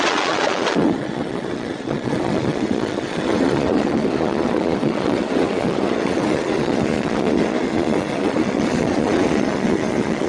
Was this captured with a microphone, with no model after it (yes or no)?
no